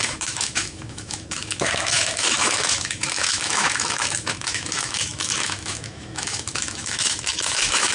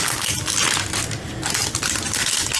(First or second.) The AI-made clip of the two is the first